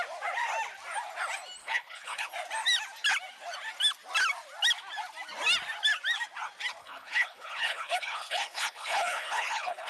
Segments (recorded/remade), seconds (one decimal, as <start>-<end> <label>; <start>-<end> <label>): 0.0-1.6 recorded; 1.6-2.3 remade; 2.3-6.8 recorded; 6.8-9.9 remade